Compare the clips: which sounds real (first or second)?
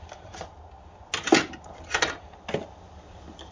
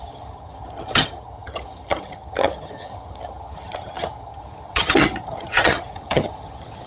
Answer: first